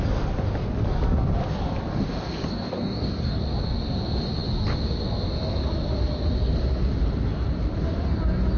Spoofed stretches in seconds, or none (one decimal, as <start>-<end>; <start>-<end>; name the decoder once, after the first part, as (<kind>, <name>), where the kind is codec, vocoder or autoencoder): 2.5-3.4 (codec, DAC)